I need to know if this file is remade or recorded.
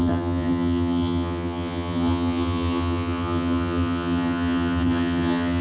remade